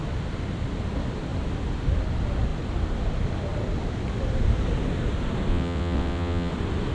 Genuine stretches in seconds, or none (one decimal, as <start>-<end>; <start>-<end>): 0.0-5.5; 6.5-6.9